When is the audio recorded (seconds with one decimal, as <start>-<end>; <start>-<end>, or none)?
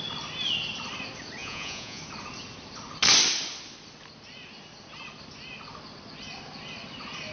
0.0-1.4; 2.0-7.3